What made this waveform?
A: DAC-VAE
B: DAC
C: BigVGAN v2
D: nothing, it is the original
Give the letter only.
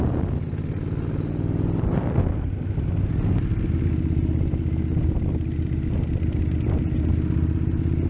D